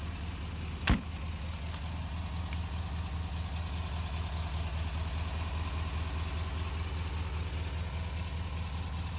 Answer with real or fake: real